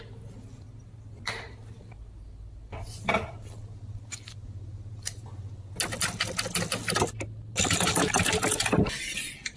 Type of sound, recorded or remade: recorded